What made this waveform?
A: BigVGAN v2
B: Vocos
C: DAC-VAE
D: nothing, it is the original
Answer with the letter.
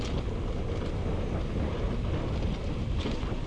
D